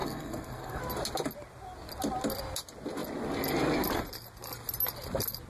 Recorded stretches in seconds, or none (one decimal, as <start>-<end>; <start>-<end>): 0.8-5.5